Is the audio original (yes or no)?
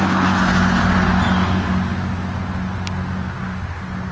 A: yes